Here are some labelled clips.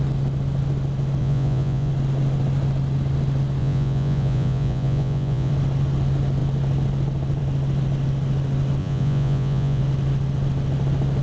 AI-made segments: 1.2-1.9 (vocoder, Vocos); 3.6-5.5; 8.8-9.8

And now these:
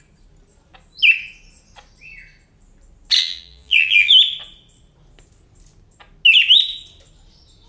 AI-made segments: 3.2-4.1 (vocoder, BigVGAN v2)